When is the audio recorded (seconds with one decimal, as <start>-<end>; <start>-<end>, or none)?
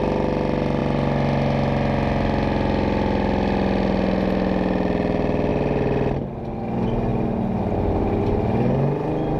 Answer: 0.0-9.4